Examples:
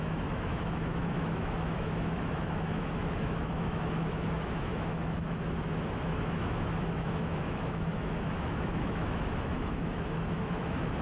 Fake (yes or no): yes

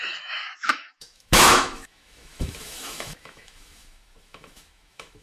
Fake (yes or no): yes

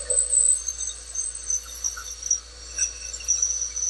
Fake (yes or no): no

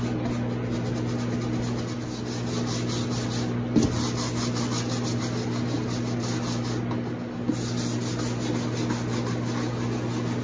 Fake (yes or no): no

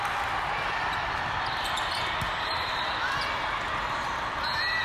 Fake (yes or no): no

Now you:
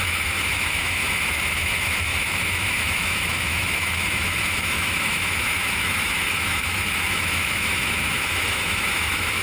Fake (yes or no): yes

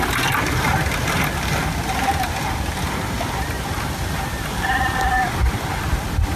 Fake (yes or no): no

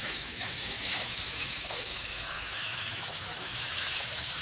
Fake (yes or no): yes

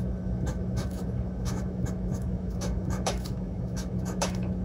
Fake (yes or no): yes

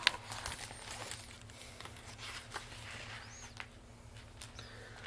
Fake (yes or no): no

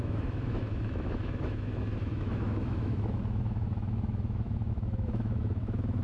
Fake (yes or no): yes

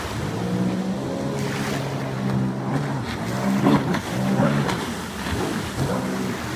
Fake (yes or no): no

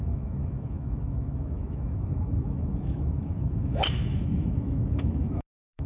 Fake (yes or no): yes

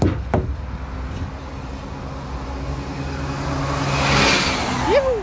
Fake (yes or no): no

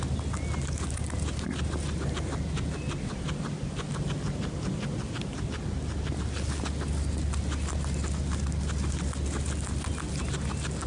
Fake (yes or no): no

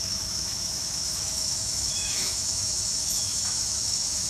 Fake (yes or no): yes